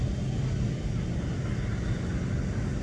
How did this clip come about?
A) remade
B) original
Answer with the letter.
B